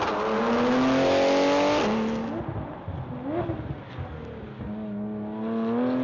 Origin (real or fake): real